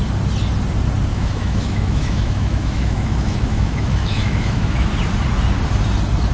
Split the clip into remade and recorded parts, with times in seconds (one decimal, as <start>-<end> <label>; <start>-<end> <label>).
0.0-1.1 recorded; 1.1-4.9 remade; 4.9-6.3 recorded